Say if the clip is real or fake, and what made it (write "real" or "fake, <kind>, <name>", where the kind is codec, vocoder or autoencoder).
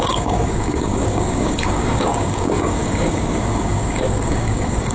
fake, codec, DAC